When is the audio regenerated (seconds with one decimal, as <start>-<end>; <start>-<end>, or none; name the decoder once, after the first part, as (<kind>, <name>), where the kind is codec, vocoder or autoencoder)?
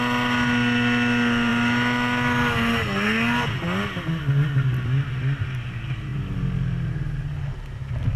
none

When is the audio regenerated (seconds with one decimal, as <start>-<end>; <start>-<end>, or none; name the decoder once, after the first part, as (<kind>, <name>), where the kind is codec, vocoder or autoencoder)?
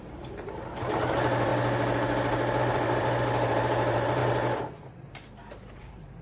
0.0-1.5 (vocoder, BigVGAN v2); 2.6-4.2; 5.5-6.2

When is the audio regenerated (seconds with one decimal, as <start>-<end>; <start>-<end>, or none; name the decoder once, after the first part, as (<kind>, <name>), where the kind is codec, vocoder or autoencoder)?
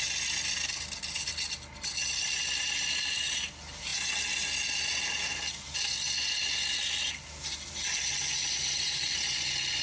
none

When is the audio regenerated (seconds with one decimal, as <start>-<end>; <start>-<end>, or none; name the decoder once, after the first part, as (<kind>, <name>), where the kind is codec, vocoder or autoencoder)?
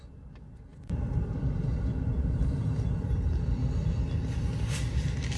0.7-3.9 (vocoder, BigVGAN v2)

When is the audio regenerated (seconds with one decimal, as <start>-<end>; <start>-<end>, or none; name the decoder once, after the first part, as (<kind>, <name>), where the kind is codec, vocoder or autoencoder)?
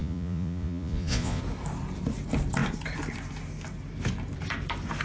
0.0-1.4 (vocoder, Vocos)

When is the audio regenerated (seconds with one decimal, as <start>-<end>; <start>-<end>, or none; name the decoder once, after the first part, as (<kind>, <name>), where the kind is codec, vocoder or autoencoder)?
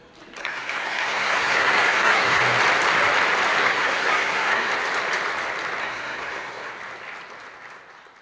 0.4-2.4 (codec, SNAC); 3.6-4.7; 5.8-6.7